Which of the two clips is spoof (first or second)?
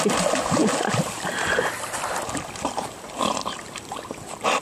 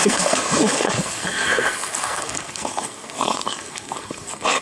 second